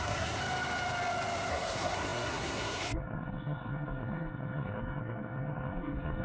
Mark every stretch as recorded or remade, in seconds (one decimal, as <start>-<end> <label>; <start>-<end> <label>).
0.0-0.4 remade; 0.4-1.5 recorded; 1.5-6.2 remade

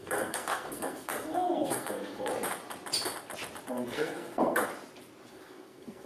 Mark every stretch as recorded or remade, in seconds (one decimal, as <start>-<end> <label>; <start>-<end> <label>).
0.0-2.3 remade; 2.3-3.7 recorded; 3.7-4.7 remade; 4.7-5.3 recorded; 5.3-6.1 remade

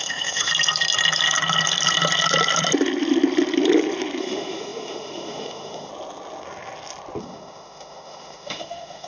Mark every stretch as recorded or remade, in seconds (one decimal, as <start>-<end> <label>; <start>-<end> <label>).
0.0-0.5 remade; 0.5-4.2 recorded; 4.2-5.9 remade; 5.9-7.2 recorded; 7.2-9.1 remade

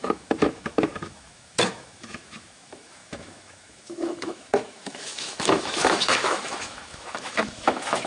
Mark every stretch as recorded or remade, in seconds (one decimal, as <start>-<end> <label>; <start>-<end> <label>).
0.0-8.1 remade